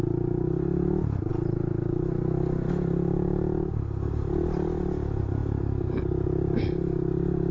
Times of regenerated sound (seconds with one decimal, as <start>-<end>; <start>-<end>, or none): none